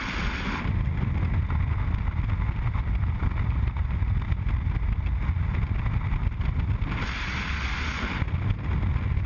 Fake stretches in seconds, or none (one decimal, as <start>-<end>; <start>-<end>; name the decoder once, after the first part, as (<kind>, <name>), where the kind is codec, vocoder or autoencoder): none